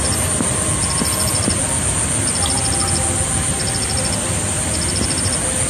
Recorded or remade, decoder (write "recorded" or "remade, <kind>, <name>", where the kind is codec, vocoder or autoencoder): recorded